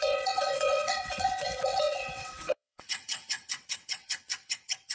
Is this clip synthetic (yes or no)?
yes